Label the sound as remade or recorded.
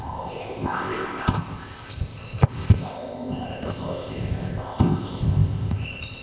remade